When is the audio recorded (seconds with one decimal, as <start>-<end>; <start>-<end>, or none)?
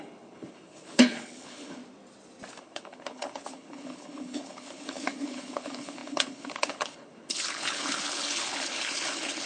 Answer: 1.8-2.6